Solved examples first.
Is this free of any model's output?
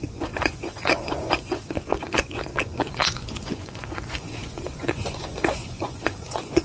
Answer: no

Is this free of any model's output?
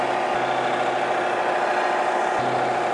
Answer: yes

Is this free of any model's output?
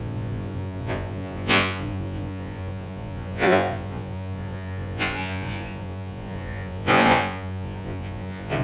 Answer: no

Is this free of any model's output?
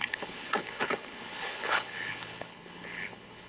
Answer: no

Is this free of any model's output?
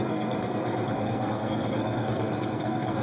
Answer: no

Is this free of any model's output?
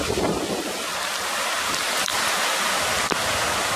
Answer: yes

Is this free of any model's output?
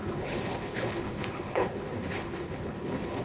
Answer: no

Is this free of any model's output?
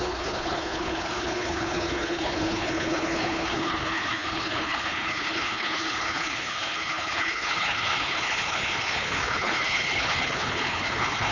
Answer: no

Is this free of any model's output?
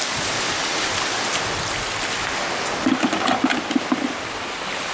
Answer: yes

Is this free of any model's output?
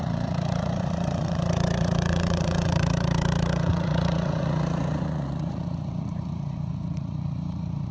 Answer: no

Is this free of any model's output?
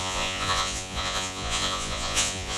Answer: no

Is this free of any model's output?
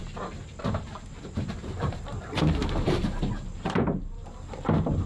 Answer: no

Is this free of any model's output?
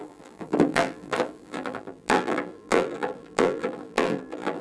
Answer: no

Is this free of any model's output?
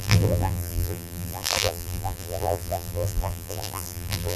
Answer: no